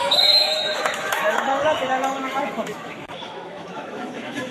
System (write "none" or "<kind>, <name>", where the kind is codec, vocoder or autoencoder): autoencoder, DAC-VAE